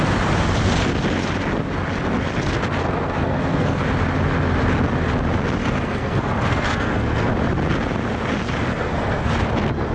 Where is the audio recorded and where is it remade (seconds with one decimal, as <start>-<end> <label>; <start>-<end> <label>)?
0.0-2.8 recorded; 2.8-3.8 remade; 3.8-5.6 recorded; 5.6-7.3 remade; 7.3-8.7 recorded; 8.7-9.3 remade; 9.3-9.9 recorded